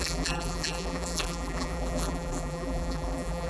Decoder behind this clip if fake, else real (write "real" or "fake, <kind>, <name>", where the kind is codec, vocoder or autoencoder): fake, vocoder, BigVGAN v2